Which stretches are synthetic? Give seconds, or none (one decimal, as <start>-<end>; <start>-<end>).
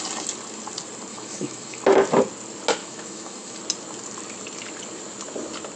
1.1-1.8; 2.8-3.6